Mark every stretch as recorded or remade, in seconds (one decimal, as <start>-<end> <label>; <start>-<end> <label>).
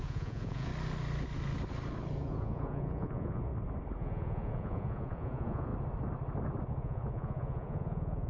0.0-0.7 remade; 0.7-2.2 recorded; 2.2-3.5 remade; 3.5-4.0 recorded; 4.0-5.7 remade; 5.7-6.7 recorded; 6.7-8.3 remade